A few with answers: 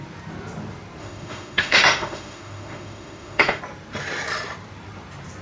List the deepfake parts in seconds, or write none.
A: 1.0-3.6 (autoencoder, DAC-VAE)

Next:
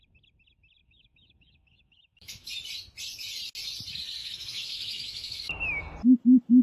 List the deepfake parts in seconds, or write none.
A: 0.8-2.5 (autoencoder, DAC-VAE); 4.2-5.8